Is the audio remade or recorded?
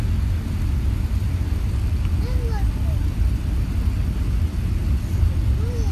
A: recorded